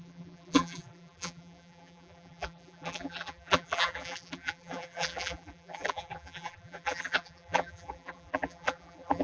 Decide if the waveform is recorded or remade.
remade